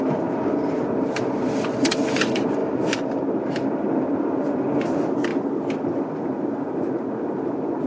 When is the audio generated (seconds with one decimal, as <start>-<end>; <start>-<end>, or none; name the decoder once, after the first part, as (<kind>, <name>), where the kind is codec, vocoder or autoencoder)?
none